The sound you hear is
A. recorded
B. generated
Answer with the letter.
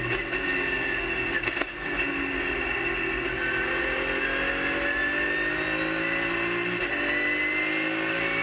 A